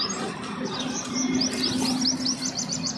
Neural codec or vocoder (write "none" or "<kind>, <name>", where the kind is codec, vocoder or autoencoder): none